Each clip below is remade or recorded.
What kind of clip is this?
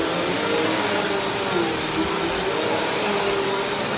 recorded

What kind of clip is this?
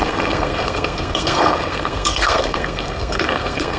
remade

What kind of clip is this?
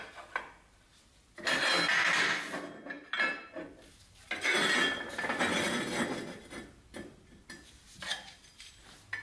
recorded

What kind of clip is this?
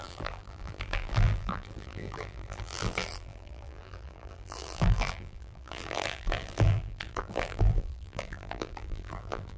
remade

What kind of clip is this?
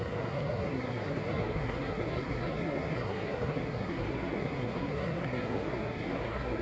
remade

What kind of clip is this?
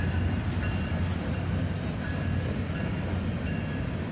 recorded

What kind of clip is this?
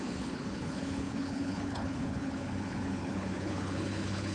remade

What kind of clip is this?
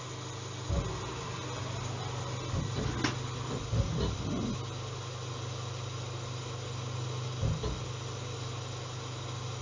recorded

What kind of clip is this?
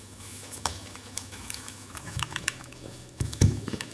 remade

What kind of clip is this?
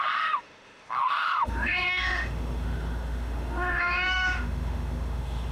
remade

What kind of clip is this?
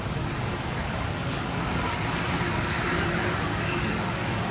remade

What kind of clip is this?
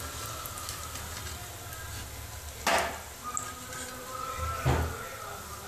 recorded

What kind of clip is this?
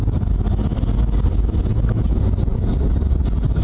recorded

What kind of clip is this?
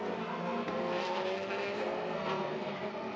remade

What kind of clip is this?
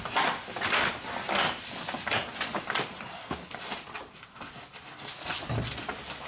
recorded